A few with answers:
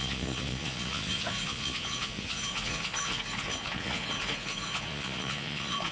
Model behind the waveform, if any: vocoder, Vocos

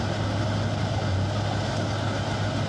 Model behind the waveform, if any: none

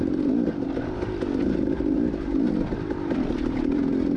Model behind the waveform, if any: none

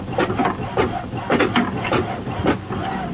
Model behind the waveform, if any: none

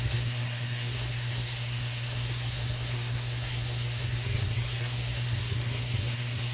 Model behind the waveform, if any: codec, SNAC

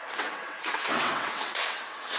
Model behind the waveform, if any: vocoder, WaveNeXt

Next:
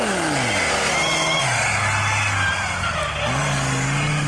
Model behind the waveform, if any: none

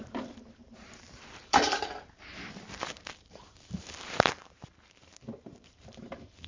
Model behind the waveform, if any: vocoder, BigVGAN v2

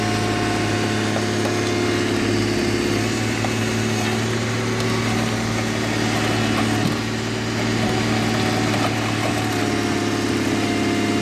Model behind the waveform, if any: none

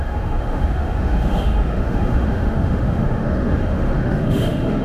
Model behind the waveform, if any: autoencoder, DAC-VAE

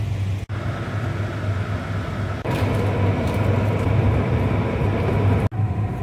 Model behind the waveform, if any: none